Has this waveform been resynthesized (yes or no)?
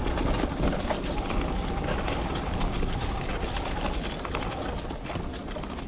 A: no